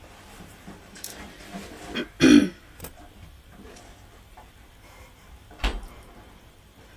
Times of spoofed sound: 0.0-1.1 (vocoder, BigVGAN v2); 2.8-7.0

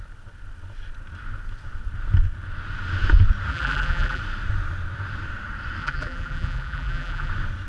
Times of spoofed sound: 3.5-4.2 (vocoder, BigVGAN v2); 5.8-7.3

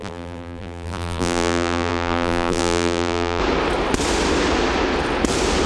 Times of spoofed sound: 0.0-3.4 (vocoder, BigVGAN v2)

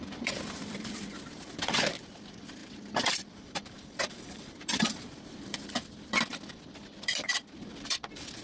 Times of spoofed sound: 0.0-8.4 (vocoder, BigVGAN v2)

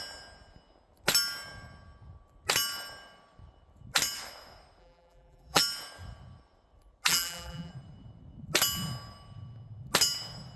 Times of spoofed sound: 4.8-5.6 (vocoder, BigVGAN v2); 7.1-7.7